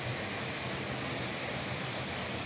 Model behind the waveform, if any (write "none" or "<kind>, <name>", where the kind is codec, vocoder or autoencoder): none